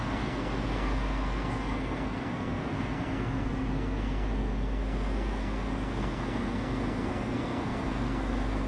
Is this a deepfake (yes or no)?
yes